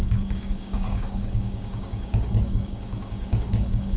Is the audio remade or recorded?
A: remade